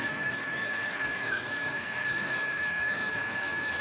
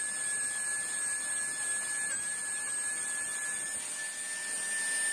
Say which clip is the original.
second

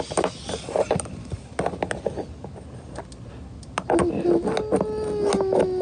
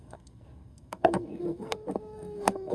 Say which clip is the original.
first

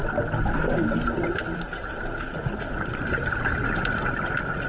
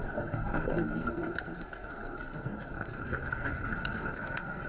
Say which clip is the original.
first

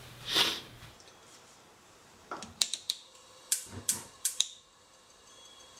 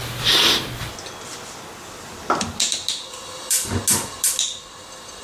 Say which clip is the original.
second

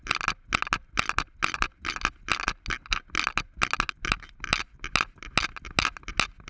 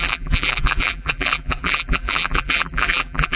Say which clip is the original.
first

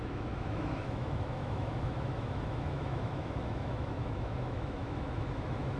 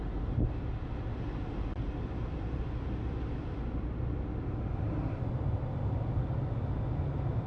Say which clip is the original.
second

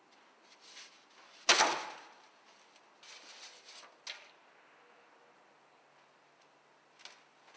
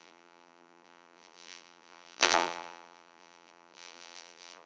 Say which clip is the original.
first